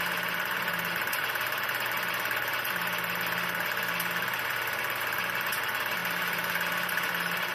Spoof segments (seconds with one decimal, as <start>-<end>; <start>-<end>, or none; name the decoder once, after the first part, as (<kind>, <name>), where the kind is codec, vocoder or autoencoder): none